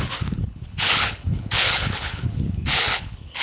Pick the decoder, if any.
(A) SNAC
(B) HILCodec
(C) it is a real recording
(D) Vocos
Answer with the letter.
B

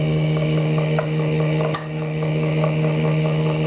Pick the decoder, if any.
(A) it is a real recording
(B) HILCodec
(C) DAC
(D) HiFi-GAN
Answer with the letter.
C